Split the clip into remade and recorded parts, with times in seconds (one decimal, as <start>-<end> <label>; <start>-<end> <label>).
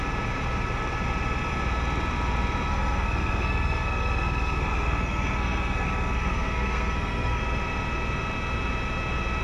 0.0-2.7 recorded; 2.7-7.4 remade; 7.4-9.4 recorded